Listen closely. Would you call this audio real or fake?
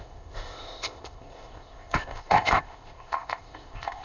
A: fake